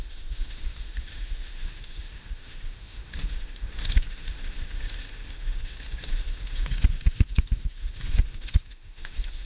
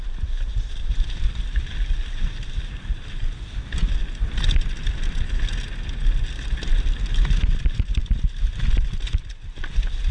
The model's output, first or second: first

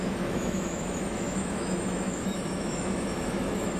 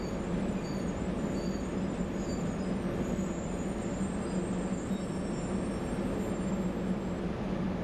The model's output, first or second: first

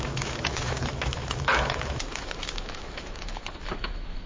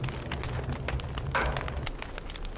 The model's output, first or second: first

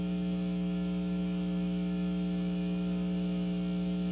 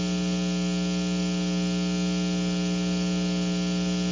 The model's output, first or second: first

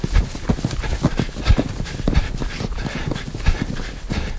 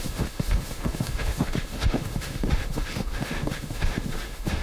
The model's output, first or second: second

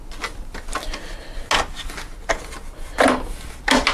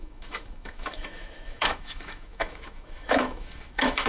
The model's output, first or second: second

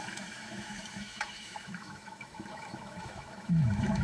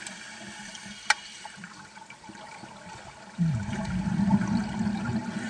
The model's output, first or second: first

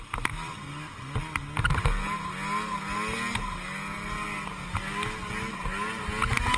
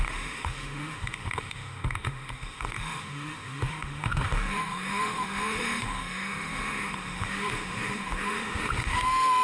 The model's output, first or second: second